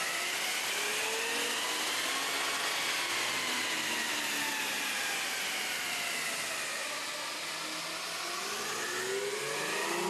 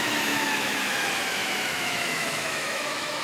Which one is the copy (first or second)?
second